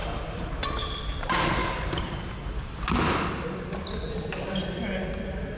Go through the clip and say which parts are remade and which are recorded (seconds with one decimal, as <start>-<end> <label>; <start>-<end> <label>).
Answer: 0.0-1.6 recorded; 1.6-2.1 remade; 2.1-5.6 recorded